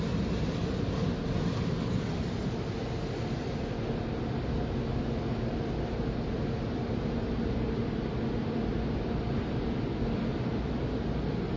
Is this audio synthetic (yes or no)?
no